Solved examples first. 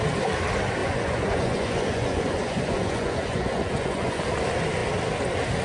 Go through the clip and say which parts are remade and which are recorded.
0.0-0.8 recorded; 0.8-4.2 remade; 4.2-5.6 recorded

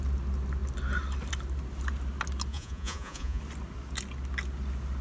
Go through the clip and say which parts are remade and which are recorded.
0.0-2.5 recorded; 2.5-3.4 remade; 3.4-5.0 recorded

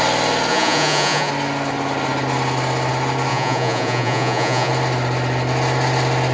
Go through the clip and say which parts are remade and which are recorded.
0.0-0.5 recorded; 0.5-1.3 remade; 1.3-3.3 recorded; 3.3-4.7 remade; 4.7-6.3 recorded

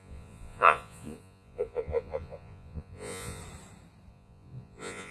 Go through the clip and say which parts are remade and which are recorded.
0.0-3.4 remade; 3.4-4.1 recorded; 4.1-5.1 remade

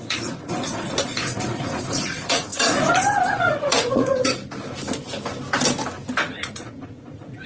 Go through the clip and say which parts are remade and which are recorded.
0.0-4.4 remade; 4.4-6.2 recorded; 6.2-7.5 remade